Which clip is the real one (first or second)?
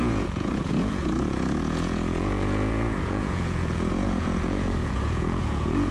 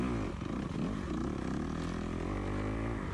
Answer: second